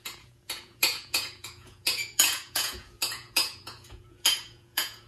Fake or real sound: fake